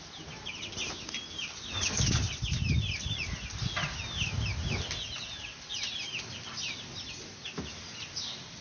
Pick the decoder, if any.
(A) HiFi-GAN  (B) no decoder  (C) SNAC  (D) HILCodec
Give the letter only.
B